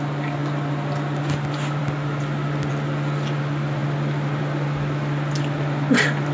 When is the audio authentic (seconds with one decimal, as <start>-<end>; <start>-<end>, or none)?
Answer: 0.0-6.3